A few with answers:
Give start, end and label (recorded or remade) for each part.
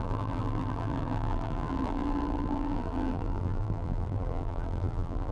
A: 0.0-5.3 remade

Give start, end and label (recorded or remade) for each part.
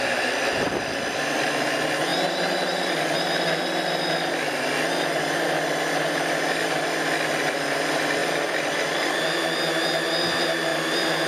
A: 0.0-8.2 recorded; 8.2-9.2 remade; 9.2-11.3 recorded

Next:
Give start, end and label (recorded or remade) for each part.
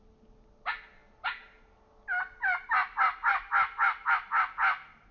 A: 0.0-5.1 recorded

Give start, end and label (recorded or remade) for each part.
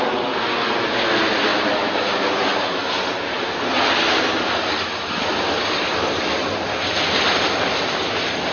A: 0.0-1.5 recorded; 1.5-6.2 remade; 6.2-8.5 recorded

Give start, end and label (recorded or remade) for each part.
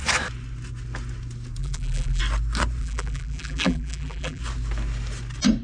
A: 0.0-1.6 recorded; 1.6-2.2 remade; 2.2-2.8 recorded; 2.8-4.4 remade; 4.4-5.6 recorded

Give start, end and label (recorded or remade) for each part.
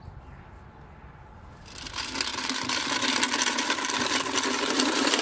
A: 0.0-2.3 recorded; 2.3-3.8 remade; 3.8-5.2 recorded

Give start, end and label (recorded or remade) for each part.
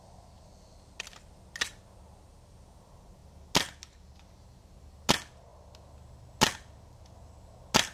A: 0.0-7.9 recorded